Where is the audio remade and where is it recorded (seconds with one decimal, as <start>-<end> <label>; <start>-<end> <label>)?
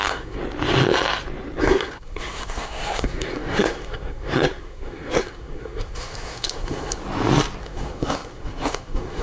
0.0-0.4 remade; 0.4-1.6 recorded; 1.6-7.0 remade; 7.0-7.6 recorded; 7.6-9.2 remade